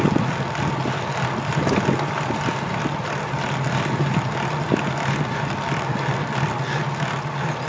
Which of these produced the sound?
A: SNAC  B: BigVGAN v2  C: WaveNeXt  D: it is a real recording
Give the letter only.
D